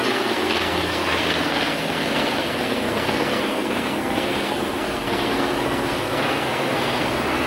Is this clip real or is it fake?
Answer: fake